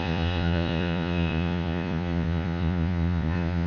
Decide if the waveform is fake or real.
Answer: fake